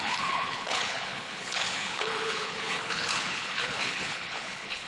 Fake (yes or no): yes